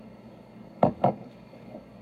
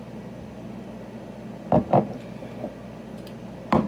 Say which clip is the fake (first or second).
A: first